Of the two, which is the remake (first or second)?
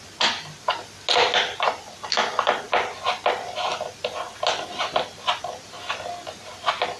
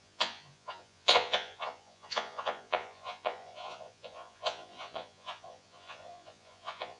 second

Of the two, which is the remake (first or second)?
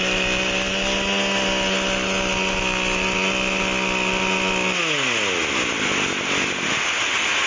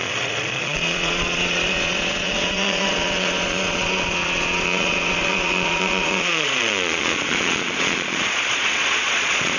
second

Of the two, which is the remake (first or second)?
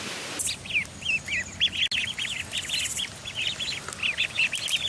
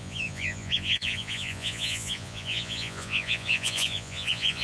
second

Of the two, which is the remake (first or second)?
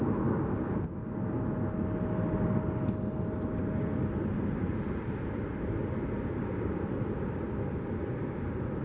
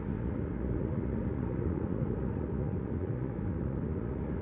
second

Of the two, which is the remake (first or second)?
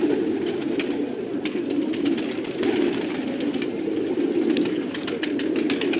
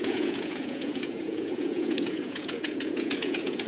second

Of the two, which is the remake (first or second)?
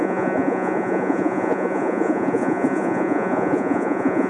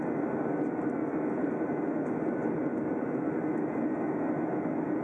first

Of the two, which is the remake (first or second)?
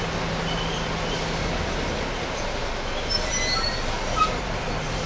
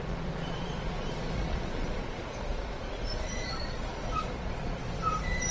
second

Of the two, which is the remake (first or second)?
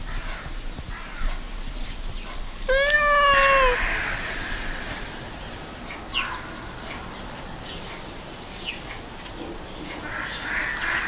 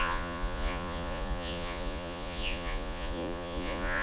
second